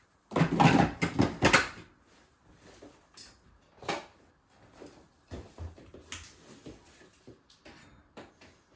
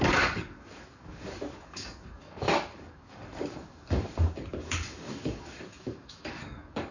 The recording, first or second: first